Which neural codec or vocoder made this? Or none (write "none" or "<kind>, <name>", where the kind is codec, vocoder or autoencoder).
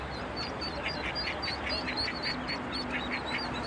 none